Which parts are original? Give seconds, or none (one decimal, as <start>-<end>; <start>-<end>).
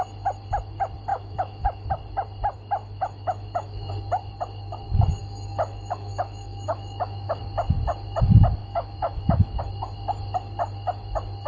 0.0-1.1; 1.9-2.8; 3.9-5.2; 7.4-8.6; 9.7-11.5